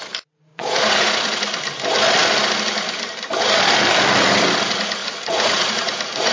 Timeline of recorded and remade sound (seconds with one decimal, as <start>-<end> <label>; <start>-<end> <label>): 0.0-0.5 recorded; 0.5-1.2 remade; 1.2-5.0 recorded; 5.0-6.3 remade